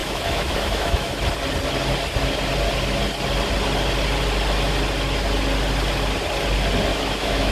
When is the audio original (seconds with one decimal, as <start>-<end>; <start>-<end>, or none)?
1.1-6.9